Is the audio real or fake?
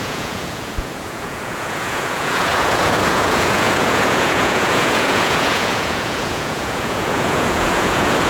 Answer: fake